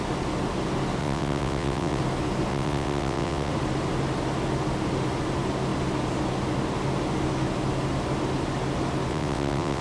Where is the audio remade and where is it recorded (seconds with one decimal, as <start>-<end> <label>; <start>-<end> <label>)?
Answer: 0.0-1.0 recorded; 1.0-2.0 remade; 2.0-2.5 recorded; 2.5-3.5 remade; 3.5-9.1 recorded; 9.1-9.8 remade